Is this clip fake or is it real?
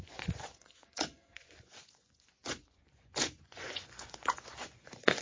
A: fake